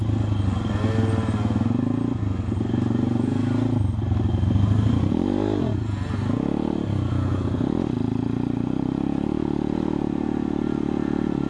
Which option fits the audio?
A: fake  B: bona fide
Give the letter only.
B